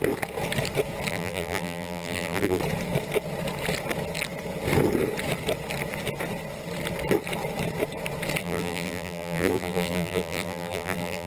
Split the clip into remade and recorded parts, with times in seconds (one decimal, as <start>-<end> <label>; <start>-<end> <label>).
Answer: 0.0-1.1 recorded; 1.1-2.6 remade; 2.6-8.4 recorded; 8.4-11.3 remade